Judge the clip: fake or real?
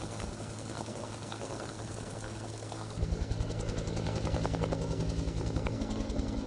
fake